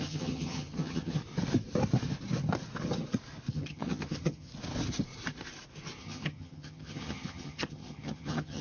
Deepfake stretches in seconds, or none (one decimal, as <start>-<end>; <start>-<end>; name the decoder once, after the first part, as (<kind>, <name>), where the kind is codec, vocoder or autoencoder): 0.0-1.2 (vocoder, HiFi-GAN); 3.5-4.5; 6.0-8.6